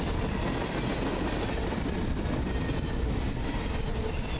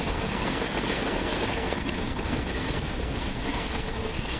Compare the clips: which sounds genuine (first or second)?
first